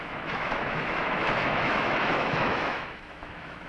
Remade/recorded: remade